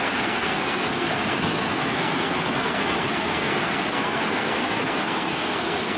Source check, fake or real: fake